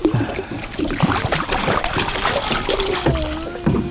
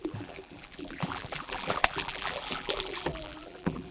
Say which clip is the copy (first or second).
second